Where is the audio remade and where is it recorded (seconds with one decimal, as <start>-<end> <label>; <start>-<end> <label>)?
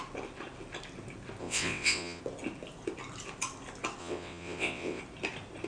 0.0-1.4 recorded; 1.4-2.2 remade; 2.2-4.0 recorded; 4.0-5.0 remade; 5.0-5.7 recorded